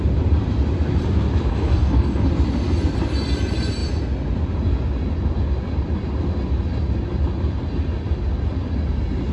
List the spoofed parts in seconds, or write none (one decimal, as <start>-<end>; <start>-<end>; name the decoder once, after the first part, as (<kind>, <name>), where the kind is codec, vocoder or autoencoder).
1.5-2.3 (codec, DAC)